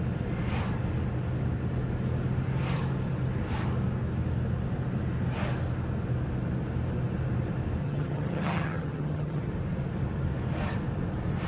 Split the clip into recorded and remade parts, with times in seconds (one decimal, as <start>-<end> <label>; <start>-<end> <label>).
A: 0.0-7.8 recorded; 7.8-9.5 remade; 9.5-11.5 recorded